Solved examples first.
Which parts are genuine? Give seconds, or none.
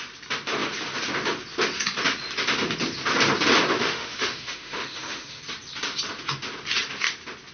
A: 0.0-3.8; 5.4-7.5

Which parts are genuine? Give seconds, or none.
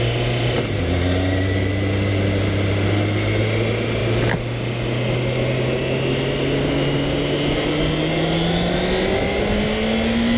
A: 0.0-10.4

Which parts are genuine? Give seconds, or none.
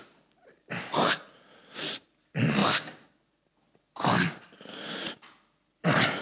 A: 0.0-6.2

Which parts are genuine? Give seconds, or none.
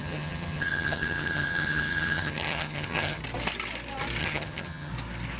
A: 3.2-4.2; 4.9-5.4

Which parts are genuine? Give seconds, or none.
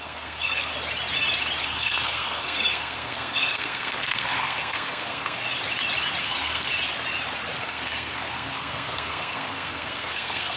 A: 0.7-1.6; 5.4-6.2; 6.7-7.6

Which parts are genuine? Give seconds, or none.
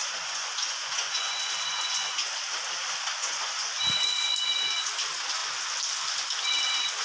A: 2.3-3.2; 3.7-7.0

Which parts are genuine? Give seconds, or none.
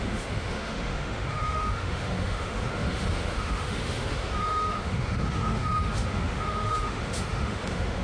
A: none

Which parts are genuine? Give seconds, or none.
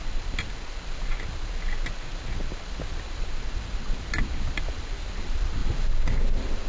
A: 0.0-6.7